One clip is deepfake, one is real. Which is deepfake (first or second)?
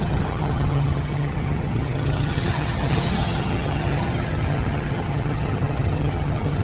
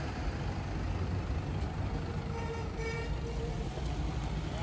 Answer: first